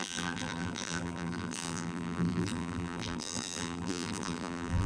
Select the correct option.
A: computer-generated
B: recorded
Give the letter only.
A